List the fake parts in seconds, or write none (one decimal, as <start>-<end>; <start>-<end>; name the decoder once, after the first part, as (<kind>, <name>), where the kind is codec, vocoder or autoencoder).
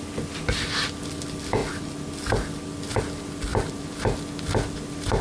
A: 3.5-4.3 (vocoder, BigVGAN v2)